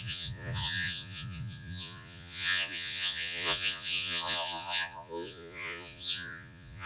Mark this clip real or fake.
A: fake